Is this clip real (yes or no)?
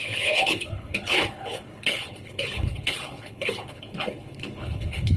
no